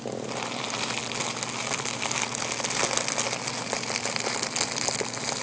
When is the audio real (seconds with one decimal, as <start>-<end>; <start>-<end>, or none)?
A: 0.0-5.4